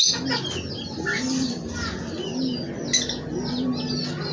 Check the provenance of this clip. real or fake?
real